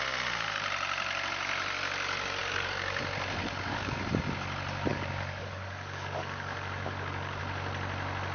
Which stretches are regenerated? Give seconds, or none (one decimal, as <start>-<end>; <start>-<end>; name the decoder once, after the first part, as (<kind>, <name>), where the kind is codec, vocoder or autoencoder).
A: 2.4-3.0 (codec, DAC); 3.4-4.0; 4.9-7.4